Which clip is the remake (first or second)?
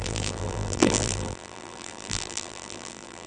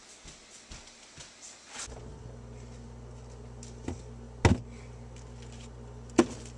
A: first